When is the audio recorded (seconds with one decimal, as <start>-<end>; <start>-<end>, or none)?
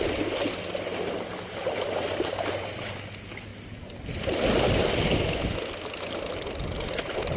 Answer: 0.0-7.4